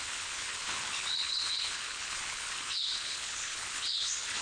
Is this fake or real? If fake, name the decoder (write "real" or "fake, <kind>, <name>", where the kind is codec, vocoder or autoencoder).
fake, codec, HILCodec